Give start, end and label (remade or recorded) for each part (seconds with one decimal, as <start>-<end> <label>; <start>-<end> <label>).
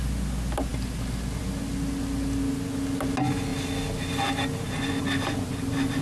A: 0.0-6.0 recorded